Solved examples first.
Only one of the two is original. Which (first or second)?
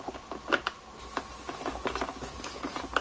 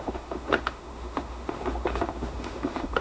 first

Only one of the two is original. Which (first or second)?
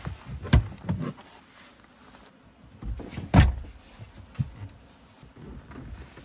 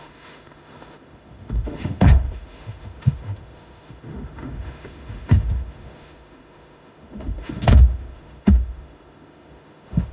first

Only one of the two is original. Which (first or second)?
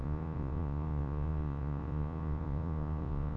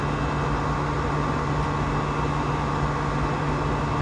second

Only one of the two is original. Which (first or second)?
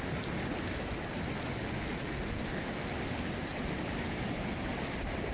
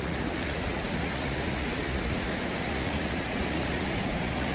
first